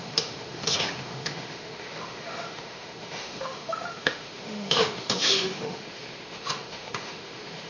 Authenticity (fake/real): fake